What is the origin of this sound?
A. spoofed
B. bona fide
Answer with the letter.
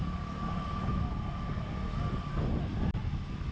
B